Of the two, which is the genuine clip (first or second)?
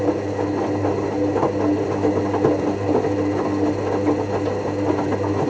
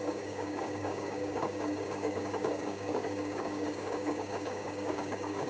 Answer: first